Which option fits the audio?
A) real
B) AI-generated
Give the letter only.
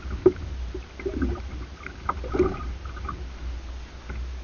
A